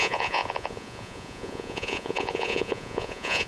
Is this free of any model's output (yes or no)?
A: no